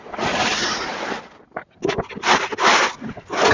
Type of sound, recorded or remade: recorded